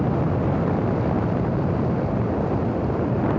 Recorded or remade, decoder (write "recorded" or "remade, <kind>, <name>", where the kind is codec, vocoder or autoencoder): recorded